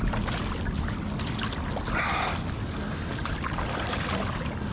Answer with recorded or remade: recorded